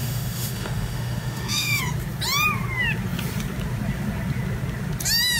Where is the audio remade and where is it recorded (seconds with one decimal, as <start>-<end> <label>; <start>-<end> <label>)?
0.0-1.8 remade; 1.8-5.4 recorded